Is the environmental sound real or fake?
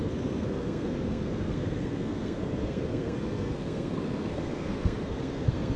fake